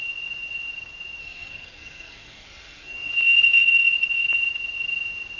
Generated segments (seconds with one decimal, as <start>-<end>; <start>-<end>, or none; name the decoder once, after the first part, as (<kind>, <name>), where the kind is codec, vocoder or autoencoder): 1.2-3.1 (codec, SNAC)